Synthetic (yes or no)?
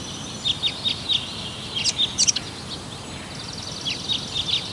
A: no